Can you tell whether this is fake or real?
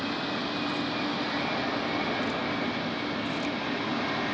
real